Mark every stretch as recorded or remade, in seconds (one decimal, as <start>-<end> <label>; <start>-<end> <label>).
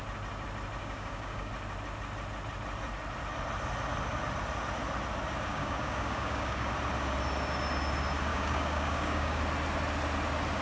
0.0-0.8 recorded; 0.8-1.5 remade; 1.5-5.5 recorded; 5.5-6.7 remade; 6.7-8.3 recorded; 8.3-9.4 remade; 9.4-10.6 recorded